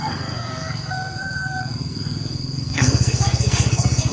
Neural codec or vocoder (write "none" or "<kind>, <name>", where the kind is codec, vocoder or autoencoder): codec, SNAC